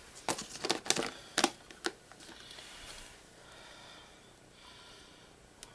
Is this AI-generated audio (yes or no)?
no